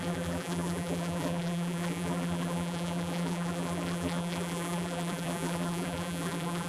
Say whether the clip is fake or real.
fake